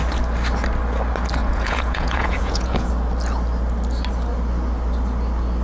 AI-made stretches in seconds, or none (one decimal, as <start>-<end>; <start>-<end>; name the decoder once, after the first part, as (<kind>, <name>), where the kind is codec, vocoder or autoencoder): 1.4-2.9 (vocoder, Vocos)